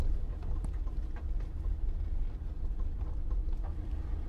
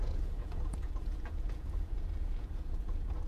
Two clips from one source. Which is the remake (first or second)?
second